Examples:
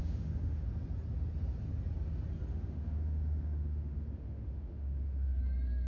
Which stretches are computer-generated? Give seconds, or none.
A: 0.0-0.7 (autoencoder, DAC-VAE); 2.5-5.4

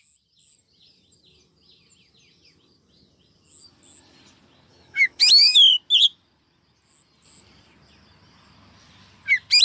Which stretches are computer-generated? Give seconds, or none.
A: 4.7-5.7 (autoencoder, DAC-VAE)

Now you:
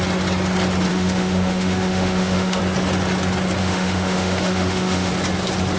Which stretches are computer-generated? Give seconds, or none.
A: 0.9-2.6 (autoencoder, DAC-VAE); 3.6-5.1